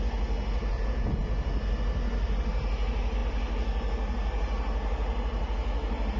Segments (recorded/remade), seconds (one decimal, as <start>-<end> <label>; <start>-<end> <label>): 0.0-0.7 recorded; 0.7-1.2 remade; 1.2-6.2 recorded